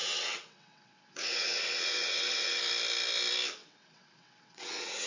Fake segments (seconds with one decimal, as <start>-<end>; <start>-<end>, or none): 0.0-2.6; 3.6-5.1